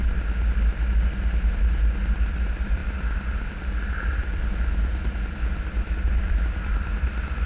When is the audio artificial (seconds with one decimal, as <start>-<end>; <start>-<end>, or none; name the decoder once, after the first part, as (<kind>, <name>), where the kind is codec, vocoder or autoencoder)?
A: none

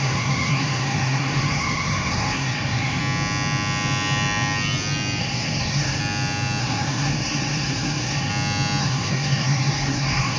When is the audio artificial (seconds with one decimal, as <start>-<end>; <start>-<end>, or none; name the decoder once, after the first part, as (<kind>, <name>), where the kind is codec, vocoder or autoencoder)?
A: 0.0-3.0 (codec, SNAC); 5.2-6.0; 6.6-8.3; 8.8-10.4

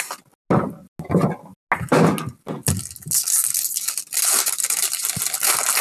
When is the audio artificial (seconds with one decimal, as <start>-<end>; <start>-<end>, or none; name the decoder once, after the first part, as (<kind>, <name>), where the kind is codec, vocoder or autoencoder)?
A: none

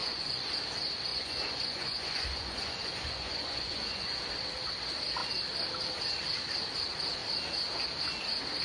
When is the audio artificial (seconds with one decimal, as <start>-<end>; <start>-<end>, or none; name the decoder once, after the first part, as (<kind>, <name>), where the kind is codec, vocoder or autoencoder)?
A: 0.0-0.5 (vocoder, Vocos); 1.1-4.2

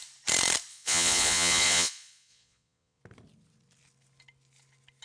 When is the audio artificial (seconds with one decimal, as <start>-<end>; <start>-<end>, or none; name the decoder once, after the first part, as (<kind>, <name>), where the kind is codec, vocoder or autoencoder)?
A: 0.7-3.0 (vocoder, Vocos)

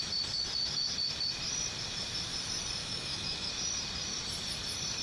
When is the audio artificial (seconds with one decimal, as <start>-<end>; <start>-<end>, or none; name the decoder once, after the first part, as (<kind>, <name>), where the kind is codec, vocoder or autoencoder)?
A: 2.8-3.5 (autoencoder, DAC-VAE)

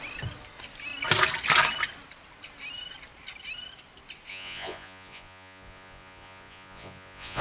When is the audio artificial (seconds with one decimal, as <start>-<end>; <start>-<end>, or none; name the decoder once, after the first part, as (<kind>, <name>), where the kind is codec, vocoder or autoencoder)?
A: 4.3-7.4 (vocoder, Vocos)

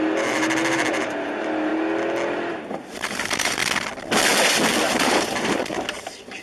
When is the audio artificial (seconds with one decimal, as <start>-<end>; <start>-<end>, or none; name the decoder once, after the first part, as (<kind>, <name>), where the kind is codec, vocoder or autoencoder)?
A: 0.0-1.7 (vocoder, BigVGAN v2); 2.5-3.6; 4.9-6.4